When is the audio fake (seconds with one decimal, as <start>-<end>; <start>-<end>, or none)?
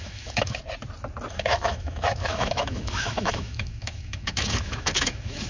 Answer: 0.0-0.6; 1.3-5.5